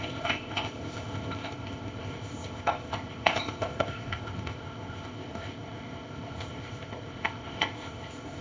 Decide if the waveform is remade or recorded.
remade